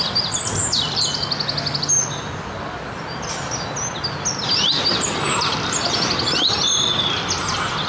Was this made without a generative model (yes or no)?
yes